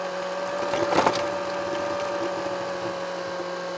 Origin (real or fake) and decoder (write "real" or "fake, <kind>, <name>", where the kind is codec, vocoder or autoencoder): real